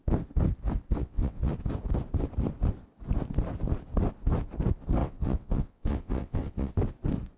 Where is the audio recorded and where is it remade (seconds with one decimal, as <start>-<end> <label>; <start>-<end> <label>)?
0.0-1.0 recorded; 1.0-1.5 remade; 1.5-5.0 recorded; 5.0-6.7 remade; 6.7-7.4 recorded